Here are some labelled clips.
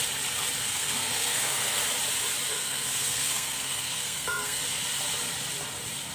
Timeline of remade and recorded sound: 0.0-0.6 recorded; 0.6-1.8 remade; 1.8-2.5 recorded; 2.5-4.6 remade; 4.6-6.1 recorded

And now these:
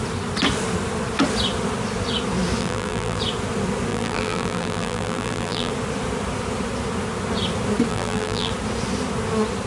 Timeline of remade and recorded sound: 0.0-2.6 recorded; 2.6-3.2 remade; 3.2-3.9 recorded; 3.9-5.7 remade; 5.7-7.9 recorded; 7.9-8.5 remade; 8.5-9.7 recorded

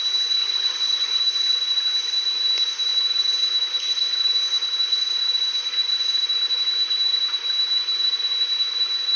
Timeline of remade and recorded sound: 0.0-0.4 recorded; 0.4-1.2 remade; 1.2-9.2 recorded

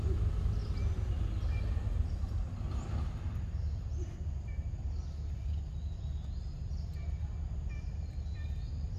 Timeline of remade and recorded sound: 0.0-9.0 recorded